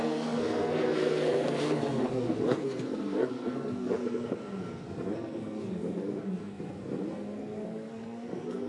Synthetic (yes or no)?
yes